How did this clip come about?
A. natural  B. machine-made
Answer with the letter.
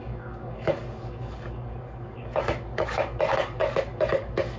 B